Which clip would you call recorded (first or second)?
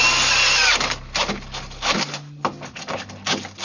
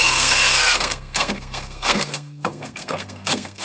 first